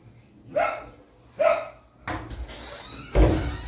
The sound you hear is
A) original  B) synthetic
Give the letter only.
A